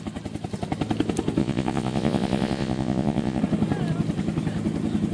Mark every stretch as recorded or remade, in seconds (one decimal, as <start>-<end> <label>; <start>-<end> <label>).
0.0-1.4 recorded; 1.4-3.4 remade; 3.4-5.1 recorded